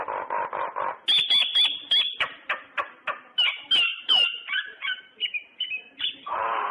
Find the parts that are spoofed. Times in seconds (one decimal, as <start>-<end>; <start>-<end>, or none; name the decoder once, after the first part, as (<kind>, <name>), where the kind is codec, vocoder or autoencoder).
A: 3.9-5.0 (vocoder, Vocos)